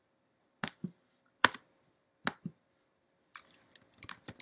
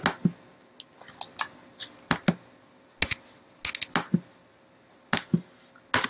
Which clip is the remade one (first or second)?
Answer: first